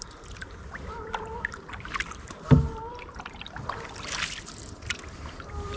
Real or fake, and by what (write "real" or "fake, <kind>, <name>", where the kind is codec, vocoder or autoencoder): fake, vocoder, BigVGAN v2